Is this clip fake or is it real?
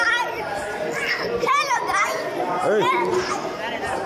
real